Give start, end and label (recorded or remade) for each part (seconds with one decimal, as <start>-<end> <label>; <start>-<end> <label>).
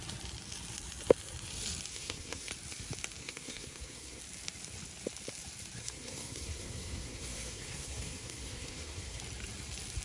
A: 0.0-1.9 recorded; 1.9-2.5 remade; 2.5-3.2 recorded; 3.2-4.2 remade; 4.2-5.8 recorded; 5.8-9.2 remade; 9.2-10.0 recorded